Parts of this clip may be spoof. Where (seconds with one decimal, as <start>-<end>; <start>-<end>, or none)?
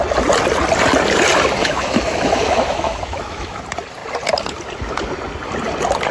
1.6-3.6